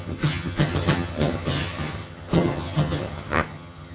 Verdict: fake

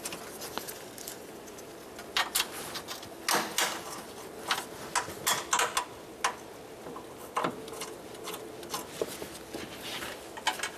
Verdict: real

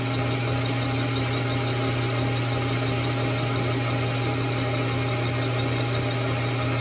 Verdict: real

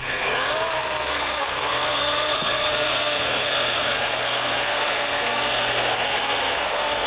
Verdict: fake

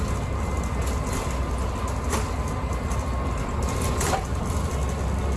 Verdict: real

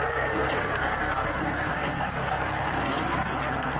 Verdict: fake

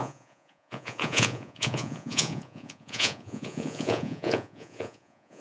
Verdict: fake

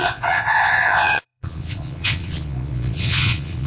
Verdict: fake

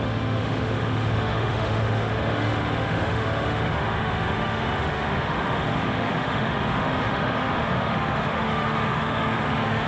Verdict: fake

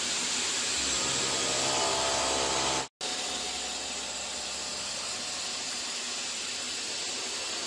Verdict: real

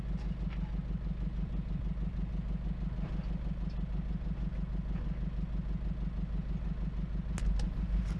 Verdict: real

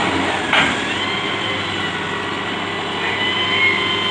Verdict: real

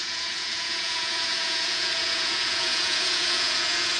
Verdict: fake